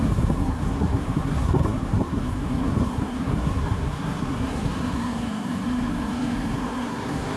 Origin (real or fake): fake